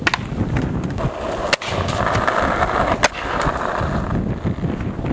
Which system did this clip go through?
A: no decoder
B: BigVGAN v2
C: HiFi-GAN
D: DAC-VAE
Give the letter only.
A